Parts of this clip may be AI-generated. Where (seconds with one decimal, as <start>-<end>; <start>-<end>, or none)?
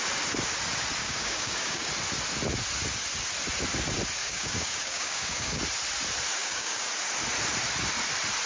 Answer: 1.0-1.9; 4.2-5.6; 6.4-6.9